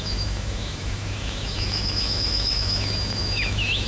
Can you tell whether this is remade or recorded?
remade